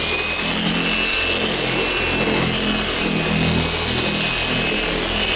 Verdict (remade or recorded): recorded